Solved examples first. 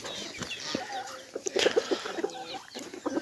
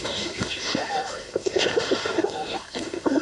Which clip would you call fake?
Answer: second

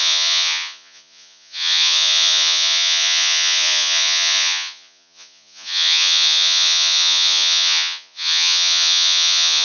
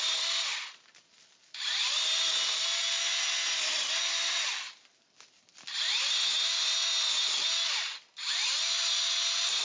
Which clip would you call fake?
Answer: first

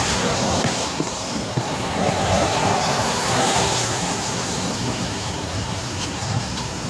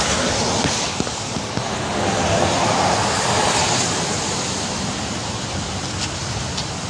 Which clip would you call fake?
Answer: first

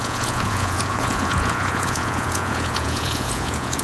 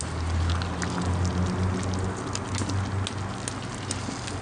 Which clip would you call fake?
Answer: first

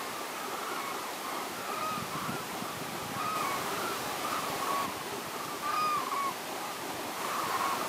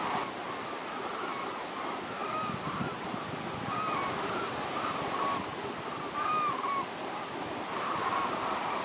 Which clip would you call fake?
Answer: first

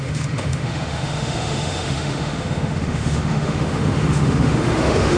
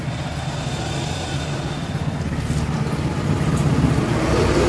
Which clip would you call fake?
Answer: first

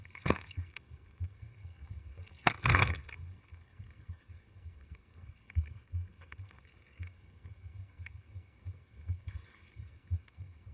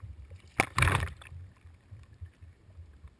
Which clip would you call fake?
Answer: first